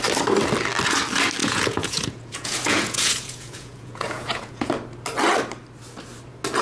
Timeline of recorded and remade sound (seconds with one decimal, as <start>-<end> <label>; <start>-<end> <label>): 0.0-1.4 recorded; 1.4-4.7 remade; 4.7-6.6 recorded